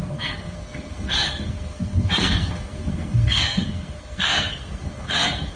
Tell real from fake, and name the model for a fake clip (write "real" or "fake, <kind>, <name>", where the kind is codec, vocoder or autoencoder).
fake, codec, SNAC